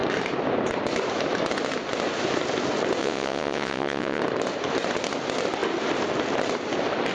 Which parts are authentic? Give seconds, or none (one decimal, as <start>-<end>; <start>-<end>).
0.0-3.0; 4.2-7.1